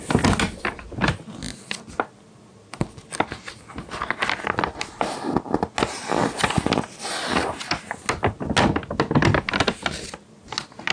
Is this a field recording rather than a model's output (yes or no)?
yes